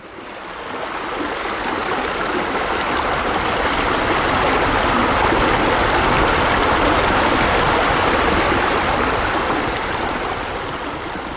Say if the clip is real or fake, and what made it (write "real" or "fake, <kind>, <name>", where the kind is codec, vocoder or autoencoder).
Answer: real